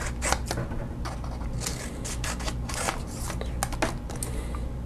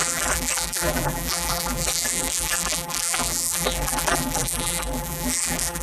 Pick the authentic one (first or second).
first